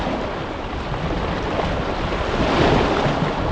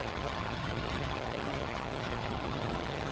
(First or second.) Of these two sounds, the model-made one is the second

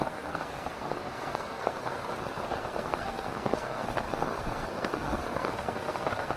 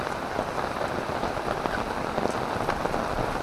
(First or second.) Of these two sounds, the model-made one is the first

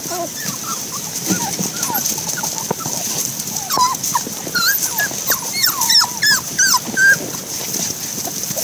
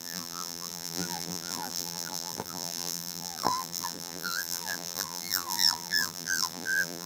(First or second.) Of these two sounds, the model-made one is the second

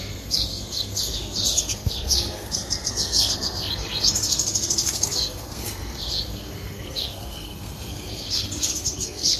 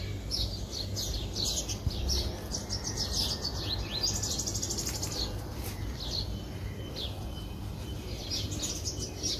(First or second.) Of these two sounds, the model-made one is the first